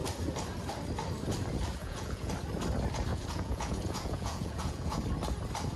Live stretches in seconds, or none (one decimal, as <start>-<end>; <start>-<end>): 0.0-1.8; 2.3-3.1; 5.0-5.8

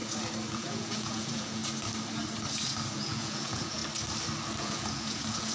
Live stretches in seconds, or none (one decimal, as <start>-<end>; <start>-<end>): 0.0-0.5; 1.6-2.9; 3.8-4.6

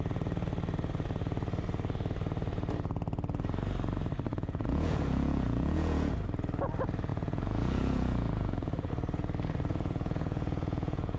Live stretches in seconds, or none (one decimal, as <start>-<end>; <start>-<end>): 0.0-4.3; 6.1-7.1; 8.9-9.7

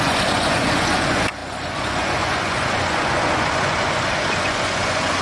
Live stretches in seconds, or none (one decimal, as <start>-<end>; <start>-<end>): none

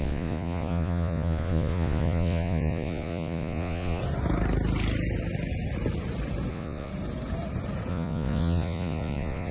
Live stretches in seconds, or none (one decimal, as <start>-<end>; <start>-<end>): 4.0-6.5; 6.9-7.9

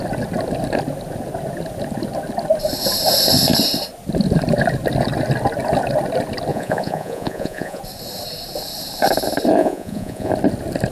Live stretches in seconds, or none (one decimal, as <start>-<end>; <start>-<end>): 0.0-6.5; 7.8-9.6; 10.3-10.9

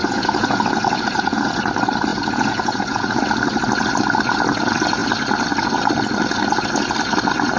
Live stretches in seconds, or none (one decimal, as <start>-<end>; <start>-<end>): 1.5-2.1; 3.2-7.6

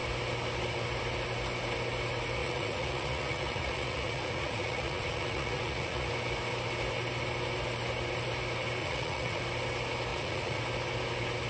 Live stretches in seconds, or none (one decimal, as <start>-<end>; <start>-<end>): 0.0-2.4; 6.1-8.8; 9.4-10.1; 10.6-11.5